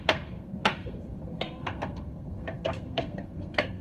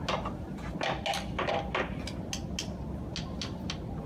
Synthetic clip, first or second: first